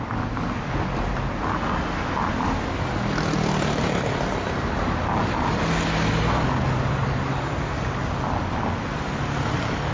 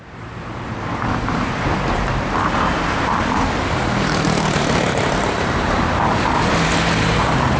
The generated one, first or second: second